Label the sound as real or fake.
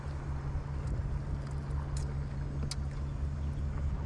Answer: real